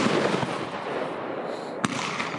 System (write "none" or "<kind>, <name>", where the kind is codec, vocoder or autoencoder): none